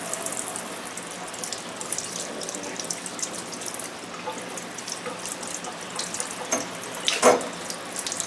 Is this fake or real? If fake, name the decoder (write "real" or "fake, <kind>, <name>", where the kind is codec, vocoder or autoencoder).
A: real